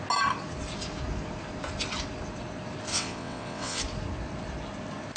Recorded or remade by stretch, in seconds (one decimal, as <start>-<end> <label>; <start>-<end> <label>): 0.0-2.9 recorded; 2.9-3.8 remade; 3.8-5.2 recorded